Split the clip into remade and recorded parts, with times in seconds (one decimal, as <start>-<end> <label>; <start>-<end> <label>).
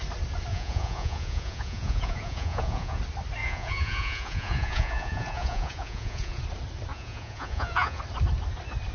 0.0-0.5 recorded; 0.5-3.0 remade; 3.0-3.4 recorded; 3.4-6.4 remade; 6.4-6.9 recorded; 6.9-8.0 remade; 8.0-8.9 recorded